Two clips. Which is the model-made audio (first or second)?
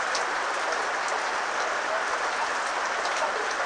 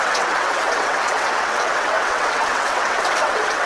second